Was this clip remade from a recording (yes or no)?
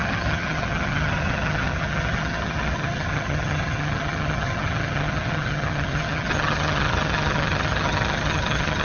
yes